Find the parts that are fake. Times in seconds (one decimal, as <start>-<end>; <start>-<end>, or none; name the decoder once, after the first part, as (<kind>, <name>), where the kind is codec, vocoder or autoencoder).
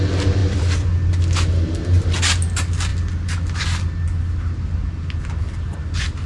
0.4-1.1 (vocoder, BigVGAN v2)